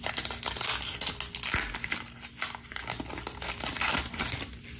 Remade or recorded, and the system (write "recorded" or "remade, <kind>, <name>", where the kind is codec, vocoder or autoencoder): recorded